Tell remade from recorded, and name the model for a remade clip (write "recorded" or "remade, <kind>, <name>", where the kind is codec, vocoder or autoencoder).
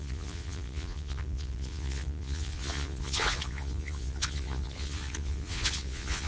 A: remade, vocoder, Vocos